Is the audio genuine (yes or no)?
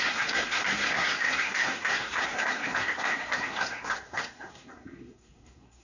no